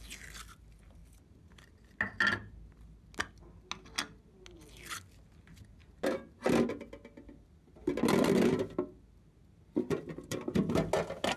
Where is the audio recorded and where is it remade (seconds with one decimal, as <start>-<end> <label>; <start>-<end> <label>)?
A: 0.0-11.4 recorded